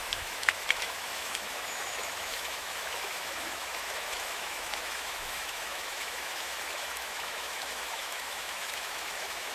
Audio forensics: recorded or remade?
remade